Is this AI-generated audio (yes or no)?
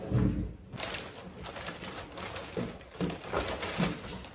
no